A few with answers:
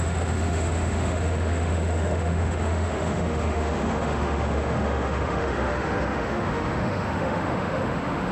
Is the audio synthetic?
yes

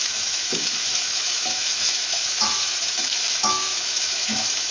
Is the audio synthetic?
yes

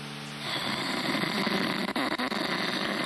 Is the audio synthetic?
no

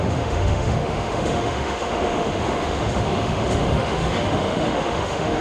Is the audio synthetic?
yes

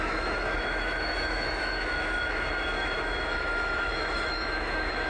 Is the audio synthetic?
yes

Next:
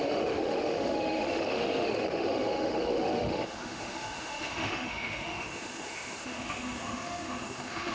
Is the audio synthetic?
yes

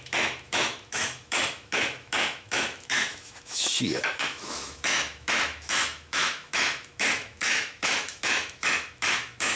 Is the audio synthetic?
yes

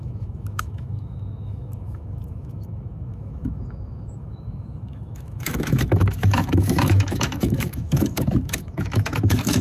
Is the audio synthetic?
yes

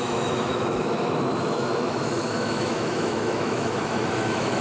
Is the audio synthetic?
yes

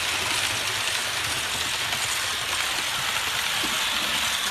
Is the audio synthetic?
no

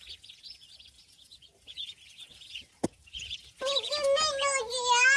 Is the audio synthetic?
no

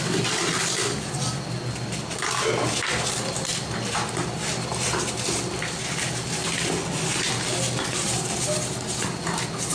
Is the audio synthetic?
no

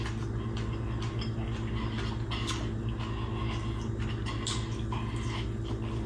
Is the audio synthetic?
no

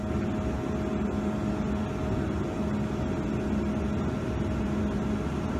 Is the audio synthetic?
no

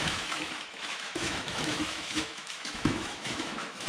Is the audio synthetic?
yes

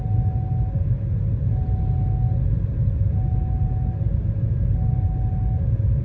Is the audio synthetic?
no